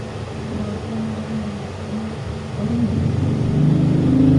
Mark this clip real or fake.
real